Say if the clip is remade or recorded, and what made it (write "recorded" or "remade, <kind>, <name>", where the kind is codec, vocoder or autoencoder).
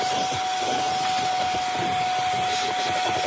recorded